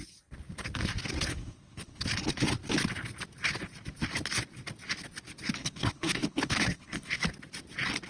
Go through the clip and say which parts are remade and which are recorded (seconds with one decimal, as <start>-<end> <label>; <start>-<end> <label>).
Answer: 0.0-1.3 recorded; 1.3-2.0 remade; 2.0-5.6 recorded; 5.6-7.2 remade; 7.2-8.1 recorded